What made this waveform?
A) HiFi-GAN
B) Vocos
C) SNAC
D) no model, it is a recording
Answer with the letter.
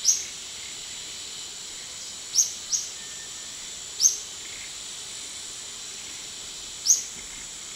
D